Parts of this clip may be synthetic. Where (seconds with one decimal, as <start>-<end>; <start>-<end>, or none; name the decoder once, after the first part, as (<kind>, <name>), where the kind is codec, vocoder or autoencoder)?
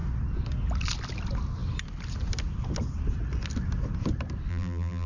4.5-5.1 (vocoder, BigVGAN v2)